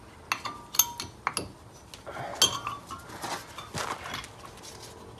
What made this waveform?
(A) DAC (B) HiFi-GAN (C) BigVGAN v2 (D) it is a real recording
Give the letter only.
D